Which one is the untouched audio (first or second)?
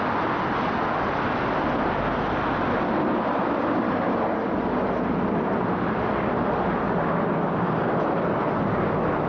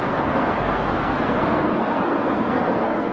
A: first